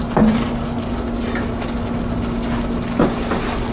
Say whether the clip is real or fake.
real